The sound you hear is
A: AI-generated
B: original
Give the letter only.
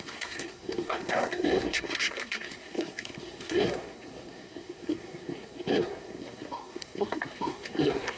A